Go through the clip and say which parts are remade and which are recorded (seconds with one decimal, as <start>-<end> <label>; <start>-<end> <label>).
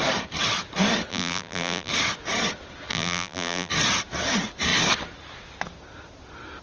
0.0-1.1 recorded; 1.1-1.9 remade; 1.9-2.9 recorded; 2.9-3.7 remade; 3.7-6.6 recorded